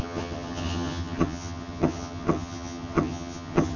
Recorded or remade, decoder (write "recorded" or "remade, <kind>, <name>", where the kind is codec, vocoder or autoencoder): remade, vocoder, HiFi-GAN